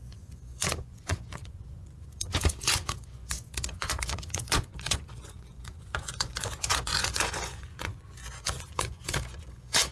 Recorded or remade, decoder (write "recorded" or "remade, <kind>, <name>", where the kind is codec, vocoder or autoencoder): remade, vocoder, Vocos